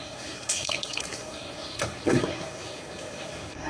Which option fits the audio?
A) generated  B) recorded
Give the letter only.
A